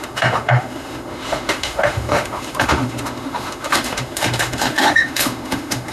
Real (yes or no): no